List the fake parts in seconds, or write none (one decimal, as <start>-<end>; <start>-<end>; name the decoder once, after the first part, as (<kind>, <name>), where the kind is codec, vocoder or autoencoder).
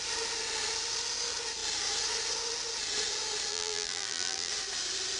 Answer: 3.5-4.5 (vocoder, BigVGAN v2)